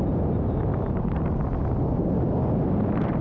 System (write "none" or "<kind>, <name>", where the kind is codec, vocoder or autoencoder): none